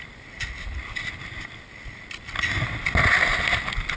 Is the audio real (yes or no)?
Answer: yes